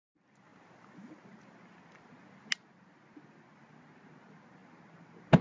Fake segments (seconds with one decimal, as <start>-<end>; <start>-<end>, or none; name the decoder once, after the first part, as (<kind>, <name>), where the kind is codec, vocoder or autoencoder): none